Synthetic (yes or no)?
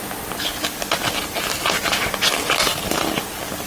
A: no